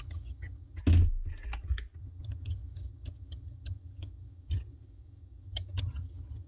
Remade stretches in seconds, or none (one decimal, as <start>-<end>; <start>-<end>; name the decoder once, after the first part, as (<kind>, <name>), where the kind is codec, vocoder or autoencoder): 0.0-0.8 (vocoder, HiFi-GAN); 2.0-6.5